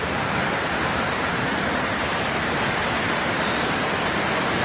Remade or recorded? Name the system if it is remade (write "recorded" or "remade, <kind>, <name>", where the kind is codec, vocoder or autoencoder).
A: remade, vocoder, BigVGAN v2